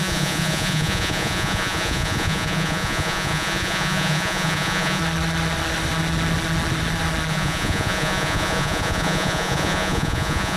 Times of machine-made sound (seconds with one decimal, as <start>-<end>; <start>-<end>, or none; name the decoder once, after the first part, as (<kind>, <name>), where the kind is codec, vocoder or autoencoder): 0.0-5.0 (vocoder, Vocos); 7.3-10.6